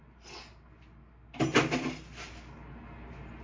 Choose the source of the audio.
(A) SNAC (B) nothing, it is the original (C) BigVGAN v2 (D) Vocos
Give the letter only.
B